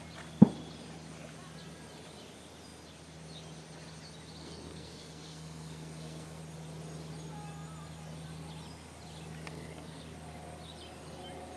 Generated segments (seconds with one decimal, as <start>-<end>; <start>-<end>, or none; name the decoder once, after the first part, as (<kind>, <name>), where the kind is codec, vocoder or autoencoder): 4.4-6.4 (codec, SNAC); 9.5-10.0